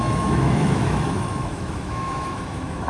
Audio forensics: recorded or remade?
remade